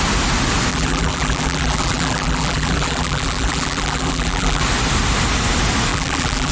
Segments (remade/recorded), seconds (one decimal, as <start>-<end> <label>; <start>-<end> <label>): 0.0-0.7 recorded; 0.7-4.6 remade; 4.6-5.9 recorded; 5.9-6.5 remade